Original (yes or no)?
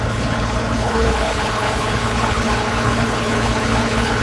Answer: no